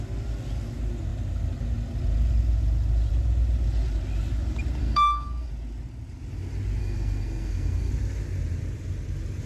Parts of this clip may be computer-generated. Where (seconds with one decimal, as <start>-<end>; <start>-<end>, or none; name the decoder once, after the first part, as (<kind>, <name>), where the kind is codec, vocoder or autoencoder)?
4.8-5.5 (codec, SNAC); 6.8-7.9